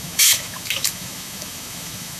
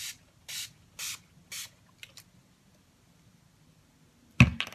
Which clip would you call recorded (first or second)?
second